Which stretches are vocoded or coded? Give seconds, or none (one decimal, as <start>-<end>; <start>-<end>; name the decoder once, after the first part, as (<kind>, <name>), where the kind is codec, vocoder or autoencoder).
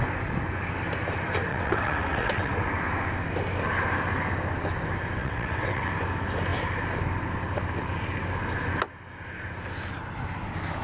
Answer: 1.5-2.7 (vocoder, WaveNeXt); 5.2-5.9